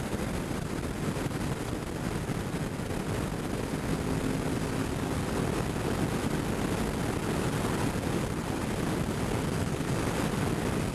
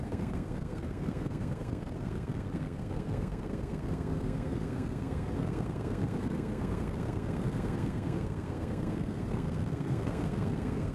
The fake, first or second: second